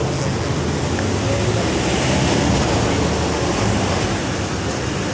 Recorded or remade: recorded